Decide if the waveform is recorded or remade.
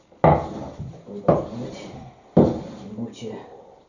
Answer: recorded